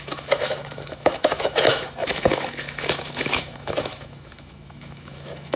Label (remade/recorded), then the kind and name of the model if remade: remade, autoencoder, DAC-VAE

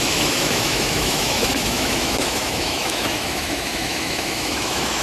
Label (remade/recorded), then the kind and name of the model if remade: remade, autoencoder, DAC-VAE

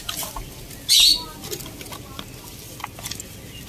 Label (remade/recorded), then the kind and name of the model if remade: recorded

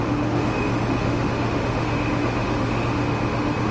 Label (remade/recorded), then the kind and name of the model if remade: remade, autoencoder, DAC-VAE